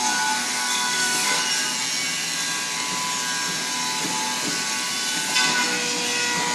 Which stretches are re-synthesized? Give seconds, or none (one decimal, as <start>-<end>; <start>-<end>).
0.6-1.4